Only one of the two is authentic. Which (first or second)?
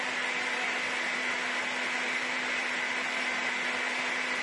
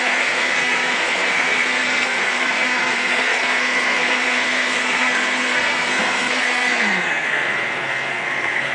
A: first